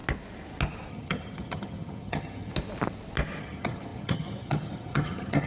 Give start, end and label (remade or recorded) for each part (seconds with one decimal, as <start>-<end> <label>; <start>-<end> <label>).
0.0-0.9 recorded; 0.9-2.5 remade; 2.5-3.4 recorded; 3.4-5.5 remade